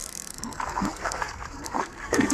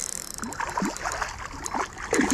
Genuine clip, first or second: second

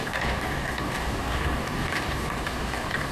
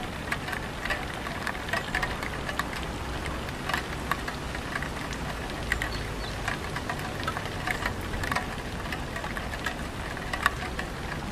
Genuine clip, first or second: second